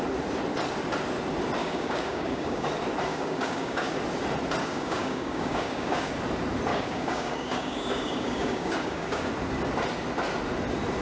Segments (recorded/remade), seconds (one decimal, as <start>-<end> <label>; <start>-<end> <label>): 0.0-1.6 recorded; 1.6-2.7 remade; 2.7-3.1 recorded; 3.1-4.0 remade; 4.0-4.6 recorded; 4.6-6.1 remade; 6.1-6.7 recorded; 6.7-9.3 remade; 9.3-11.0 recorded